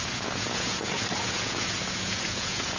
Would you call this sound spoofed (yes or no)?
yes